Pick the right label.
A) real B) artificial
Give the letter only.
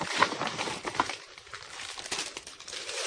B